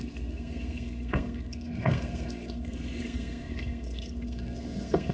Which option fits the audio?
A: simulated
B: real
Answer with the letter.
A